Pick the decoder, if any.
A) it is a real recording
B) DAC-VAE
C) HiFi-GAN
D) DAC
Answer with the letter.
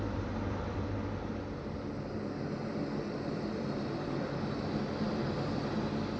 A